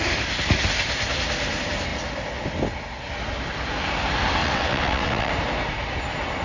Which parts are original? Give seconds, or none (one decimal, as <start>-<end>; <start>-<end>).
0.0-4.4; 5.3-6.4